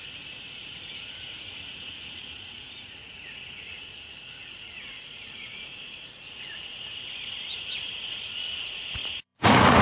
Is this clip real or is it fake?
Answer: fake